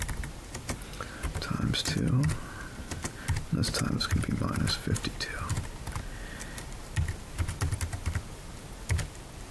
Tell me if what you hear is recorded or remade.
recorded